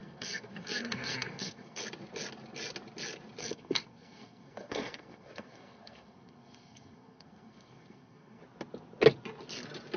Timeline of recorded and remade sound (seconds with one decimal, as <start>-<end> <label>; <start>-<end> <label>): 0.0-1.8 remade; 1.8-3.4 recorded; 3.4-8.4 remade; 8.4-10.0 recorded